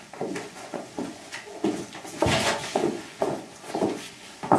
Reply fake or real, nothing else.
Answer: fake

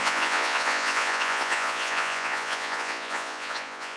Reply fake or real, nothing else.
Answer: fake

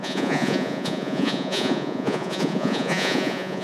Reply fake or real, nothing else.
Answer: fake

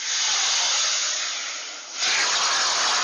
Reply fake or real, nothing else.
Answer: real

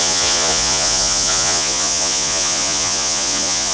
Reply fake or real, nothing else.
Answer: fake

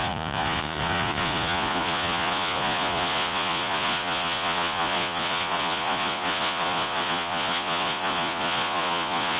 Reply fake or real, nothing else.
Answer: fake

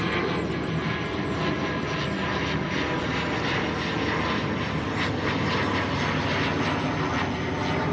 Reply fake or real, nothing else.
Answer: real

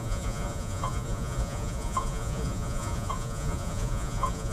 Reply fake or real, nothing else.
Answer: fake